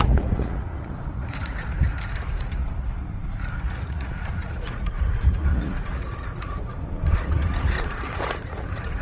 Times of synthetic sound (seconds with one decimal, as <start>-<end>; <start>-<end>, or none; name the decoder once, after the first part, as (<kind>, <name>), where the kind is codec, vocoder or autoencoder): 0.0-9.0 (vocoder, Vocos)